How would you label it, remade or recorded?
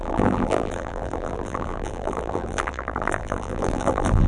remade